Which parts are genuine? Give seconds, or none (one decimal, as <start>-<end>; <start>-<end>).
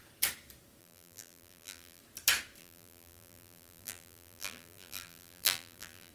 0.0-0.8; 2.0-2.6